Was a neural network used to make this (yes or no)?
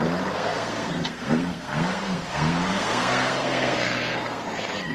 yes